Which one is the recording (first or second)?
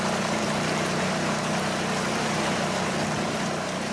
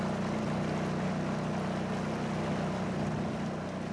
second